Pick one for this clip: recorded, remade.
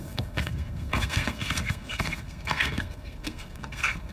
remade